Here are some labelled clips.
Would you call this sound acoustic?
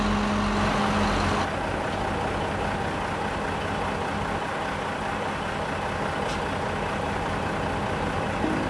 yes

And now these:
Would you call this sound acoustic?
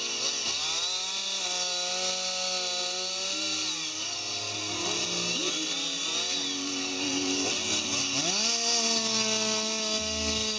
yes